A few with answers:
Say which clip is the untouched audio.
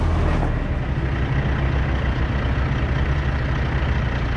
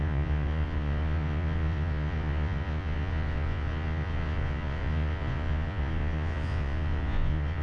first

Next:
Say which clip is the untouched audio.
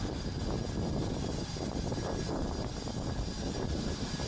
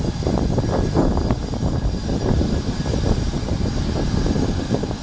first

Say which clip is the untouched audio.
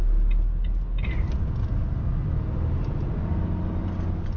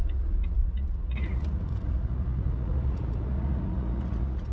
first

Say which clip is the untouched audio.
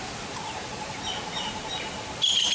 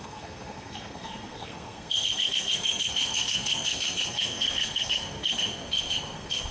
first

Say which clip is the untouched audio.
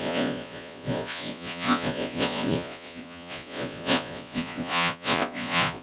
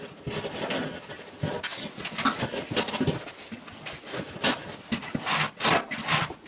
second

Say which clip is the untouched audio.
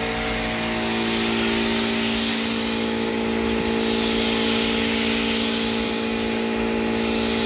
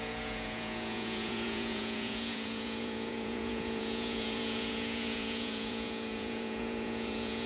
first